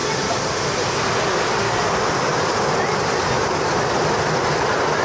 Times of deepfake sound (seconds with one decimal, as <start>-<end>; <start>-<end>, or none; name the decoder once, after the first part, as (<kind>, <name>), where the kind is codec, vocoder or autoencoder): none